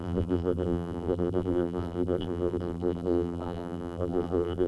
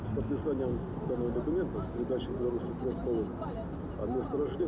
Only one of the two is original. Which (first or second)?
second